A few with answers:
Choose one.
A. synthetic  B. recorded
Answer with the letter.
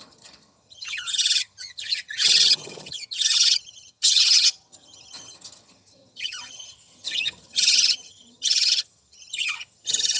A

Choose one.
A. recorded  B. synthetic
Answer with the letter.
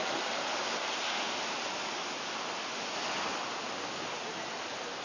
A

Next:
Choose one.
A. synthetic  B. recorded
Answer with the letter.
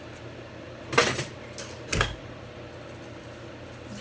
B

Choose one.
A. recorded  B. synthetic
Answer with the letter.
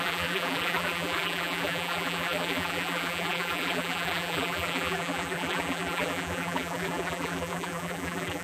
B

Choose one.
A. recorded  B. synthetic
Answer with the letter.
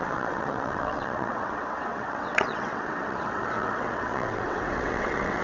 B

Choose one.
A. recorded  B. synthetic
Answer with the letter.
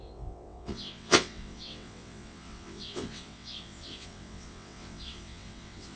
B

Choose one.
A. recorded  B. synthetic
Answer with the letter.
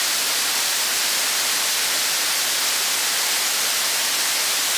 A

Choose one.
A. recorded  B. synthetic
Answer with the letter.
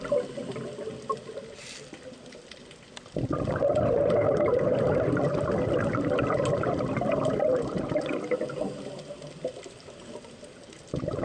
A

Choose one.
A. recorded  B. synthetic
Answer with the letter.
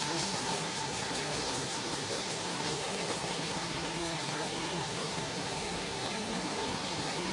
B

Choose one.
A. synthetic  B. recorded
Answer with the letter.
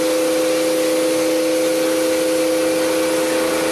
B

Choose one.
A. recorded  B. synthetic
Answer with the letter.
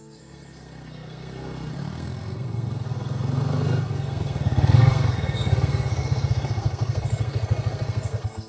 B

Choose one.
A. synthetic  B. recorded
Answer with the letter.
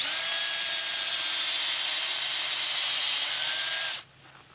B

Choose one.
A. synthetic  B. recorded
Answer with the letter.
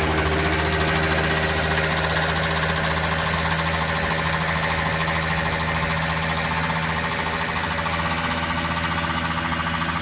B